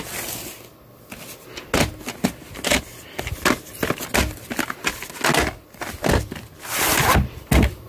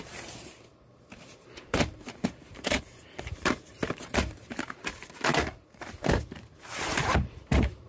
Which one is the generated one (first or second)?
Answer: second